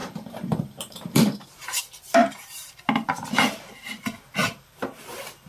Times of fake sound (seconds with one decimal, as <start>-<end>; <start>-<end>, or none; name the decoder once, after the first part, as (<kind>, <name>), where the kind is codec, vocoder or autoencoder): 0.0-1.8 (vocoder, BigVGAN v2); 2.2-2.7; 4.4-5.0